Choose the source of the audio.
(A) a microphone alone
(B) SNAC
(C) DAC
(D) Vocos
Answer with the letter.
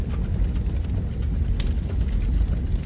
A